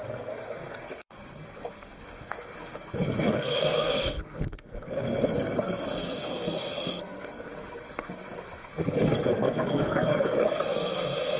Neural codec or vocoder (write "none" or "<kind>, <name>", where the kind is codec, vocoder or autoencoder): codec, SNAC